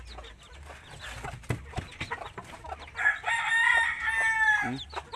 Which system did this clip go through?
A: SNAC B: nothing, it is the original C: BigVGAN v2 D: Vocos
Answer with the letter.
B